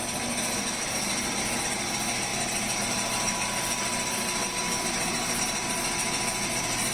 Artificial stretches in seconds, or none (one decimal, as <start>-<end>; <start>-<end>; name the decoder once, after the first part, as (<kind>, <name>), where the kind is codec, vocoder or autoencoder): none